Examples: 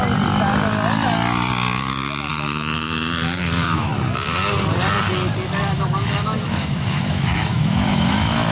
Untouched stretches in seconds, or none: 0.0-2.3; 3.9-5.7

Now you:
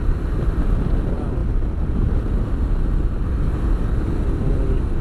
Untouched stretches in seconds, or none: 0.0-5.0

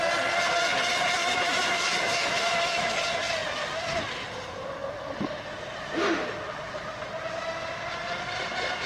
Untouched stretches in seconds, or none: 0.0-1.2; 2.9-8.9

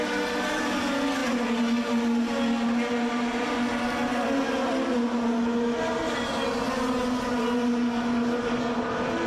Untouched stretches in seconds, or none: 0.0-9.3